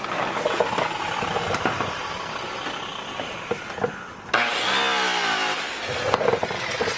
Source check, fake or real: real